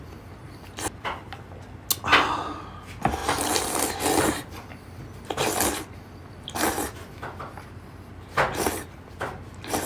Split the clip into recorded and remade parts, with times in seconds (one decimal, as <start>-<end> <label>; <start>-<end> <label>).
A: 0.0-9.9 recorded